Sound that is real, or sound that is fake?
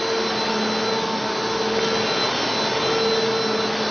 real